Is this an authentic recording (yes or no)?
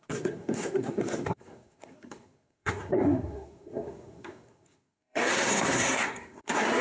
no